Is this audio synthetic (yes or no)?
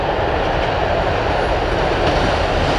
no